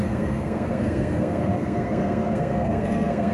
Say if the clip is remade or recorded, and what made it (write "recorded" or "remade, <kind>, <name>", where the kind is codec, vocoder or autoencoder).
remade, codec, SNAC